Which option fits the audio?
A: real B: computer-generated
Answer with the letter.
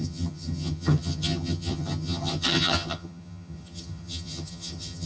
B